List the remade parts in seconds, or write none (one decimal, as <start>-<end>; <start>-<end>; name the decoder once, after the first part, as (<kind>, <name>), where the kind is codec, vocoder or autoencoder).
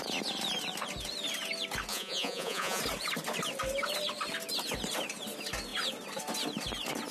1.9-2.8 (vocoder, Vocos)